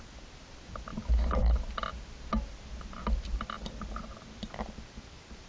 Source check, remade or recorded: recorded